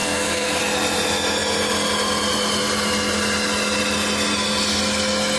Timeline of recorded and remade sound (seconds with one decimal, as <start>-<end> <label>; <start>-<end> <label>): 0.0-0.6 remade; 0.6-5.4 recorded